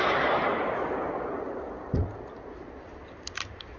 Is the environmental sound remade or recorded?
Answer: recorded